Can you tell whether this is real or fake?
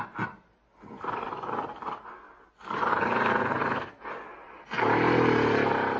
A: real